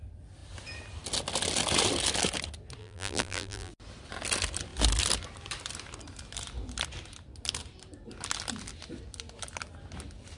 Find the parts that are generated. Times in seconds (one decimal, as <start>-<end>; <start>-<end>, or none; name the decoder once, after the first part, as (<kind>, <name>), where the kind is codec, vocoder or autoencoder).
2.8-3.7 (vocoder, BigVGAN v2)